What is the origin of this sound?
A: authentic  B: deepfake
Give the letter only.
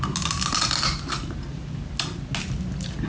A